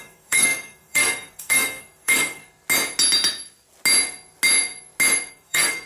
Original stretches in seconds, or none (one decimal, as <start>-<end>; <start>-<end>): 2.4-5.3